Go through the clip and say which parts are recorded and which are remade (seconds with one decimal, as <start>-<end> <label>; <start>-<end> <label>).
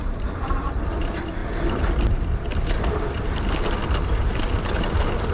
0.0-5.3 recorded